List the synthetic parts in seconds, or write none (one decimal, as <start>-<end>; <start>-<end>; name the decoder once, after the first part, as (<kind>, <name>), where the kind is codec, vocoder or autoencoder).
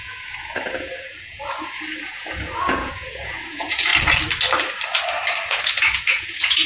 0.0-3.9 (vocoder, Vocos); 5.5-6.7